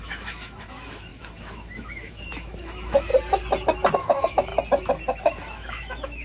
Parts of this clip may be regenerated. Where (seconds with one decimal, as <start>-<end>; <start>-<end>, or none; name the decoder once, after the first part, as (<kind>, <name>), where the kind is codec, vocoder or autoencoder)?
0.0-3.1 (autoencoder, DAC-VAE); 3.9-4.5; 5.2-6.2